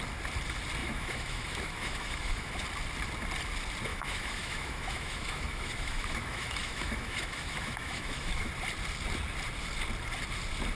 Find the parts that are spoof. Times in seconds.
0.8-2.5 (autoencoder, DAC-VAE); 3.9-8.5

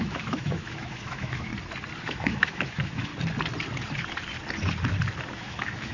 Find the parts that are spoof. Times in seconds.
0.0-1.5 (autoencoder, DAC-VAE); 2.0-3.1; 5.3-5.9

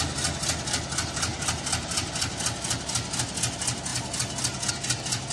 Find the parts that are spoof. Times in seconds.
none

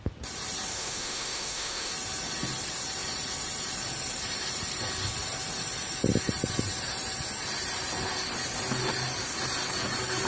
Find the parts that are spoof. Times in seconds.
0.7-1.9 (autoencoder, DAC-VAE)

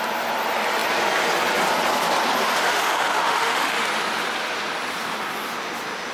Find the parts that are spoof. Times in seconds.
2.6-3.9 (autoencoder, DAC-VAE)

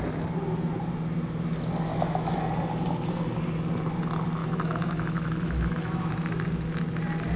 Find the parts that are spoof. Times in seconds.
1.9-2.4 (autoencoder, DAC-VAE); 4.4-6.1

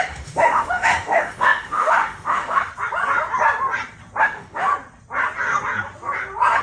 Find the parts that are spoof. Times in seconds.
0.0-2.7 (autoencoder, DAC-VAE); 4.2-4.7